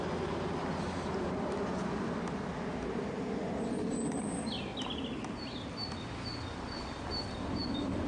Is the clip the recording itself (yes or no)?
yes